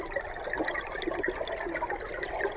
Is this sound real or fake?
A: real